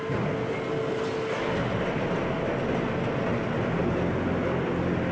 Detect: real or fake real